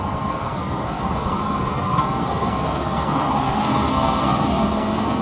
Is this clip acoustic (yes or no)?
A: no